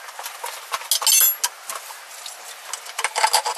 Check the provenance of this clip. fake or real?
real